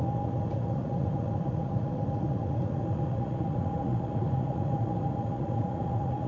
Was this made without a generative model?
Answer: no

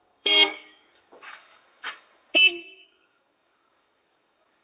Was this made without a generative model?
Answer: no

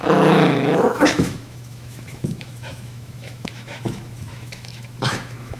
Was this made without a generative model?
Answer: no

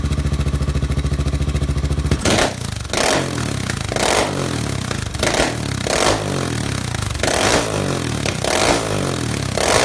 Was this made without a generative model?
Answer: yes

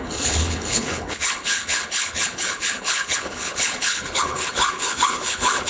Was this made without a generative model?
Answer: no